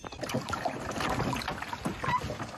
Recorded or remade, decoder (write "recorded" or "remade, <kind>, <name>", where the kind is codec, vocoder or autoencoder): recorded